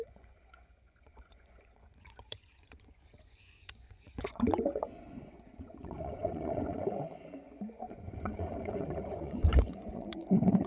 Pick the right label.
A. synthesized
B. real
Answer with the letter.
A